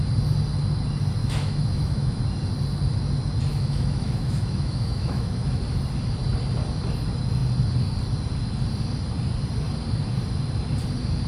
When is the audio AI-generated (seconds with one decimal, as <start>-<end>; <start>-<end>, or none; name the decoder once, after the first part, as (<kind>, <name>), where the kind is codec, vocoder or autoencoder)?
1.2-2.2 (autoencoder, DAC-VAE); 3.5-5.6